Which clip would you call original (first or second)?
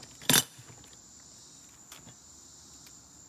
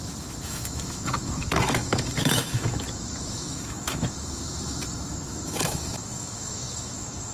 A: first